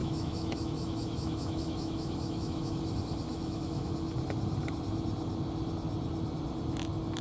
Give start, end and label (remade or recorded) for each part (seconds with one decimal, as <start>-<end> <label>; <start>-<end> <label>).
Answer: 0.0-2.8 remade; 2.8-3.3 recorded; 3.3-3.9 remade; 3.9-7.2 recorded